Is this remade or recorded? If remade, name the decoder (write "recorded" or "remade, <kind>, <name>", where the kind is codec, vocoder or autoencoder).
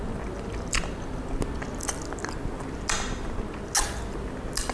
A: recorded